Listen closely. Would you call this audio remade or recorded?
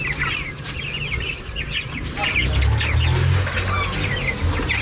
recorded